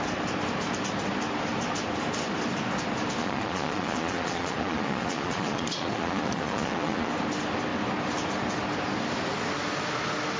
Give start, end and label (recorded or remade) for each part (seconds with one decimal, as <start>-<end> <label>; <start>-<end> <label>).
0.0-3.2 recorded; 3.2-7.1 remade; 7.1-10.4 recorded